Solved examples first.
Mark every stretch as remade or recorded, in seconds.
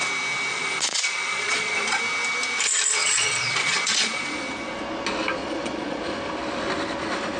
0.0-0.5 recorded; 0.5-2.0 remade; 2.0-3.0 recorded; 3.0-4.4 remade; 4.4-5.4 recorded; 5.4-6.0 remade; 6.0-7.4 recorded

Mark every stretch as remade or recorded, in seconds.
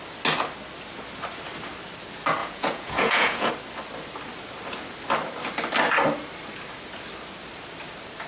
0.0-2.4 recorded; 2.4-3.5 remade; 3.5-8.3 recorded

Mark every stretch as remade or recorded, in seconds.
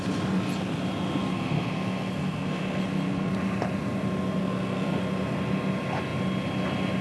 0.0-1.2 recorded; 1.2-3.3 remade; 3.3-4.4 recorded; 4.4-5.0 remade; 5.0-7.0 recorded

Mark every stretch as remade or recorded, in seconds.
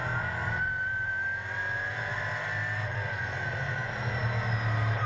0.0-5.1 recorded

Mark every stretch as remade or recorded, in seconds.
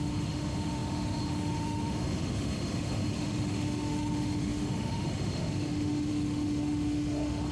0.0-7.5 remade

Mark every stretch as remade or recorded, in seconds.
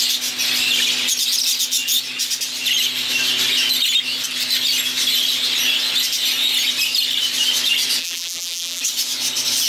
0.0-8.0 recorded; 8.0-8.8 remade; 8.8-9.7 recorded